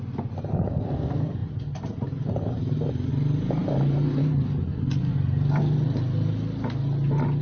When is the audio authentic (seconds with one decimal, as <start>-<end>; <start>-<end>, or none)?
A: 0.0-1.4; 3.1-3.6; 4.2-7.4